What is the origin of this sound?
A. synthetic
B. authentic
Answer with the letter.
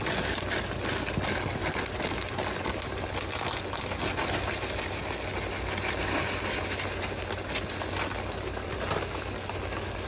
B